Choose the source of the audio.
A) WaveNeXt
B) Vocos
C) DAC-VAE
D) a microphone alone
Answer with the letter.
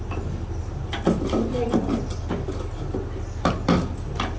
D